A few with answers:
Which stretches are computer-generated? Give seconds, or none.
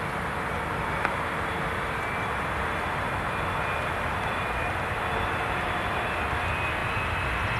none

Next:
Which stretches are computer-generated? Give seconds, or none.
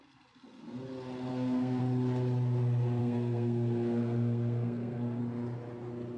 1.3-1.8 (codec, SNAC); 3.0-5.2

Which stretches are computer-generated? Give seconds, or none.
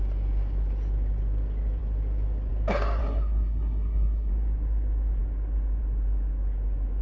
3.0-4.3 (codec, SNAC)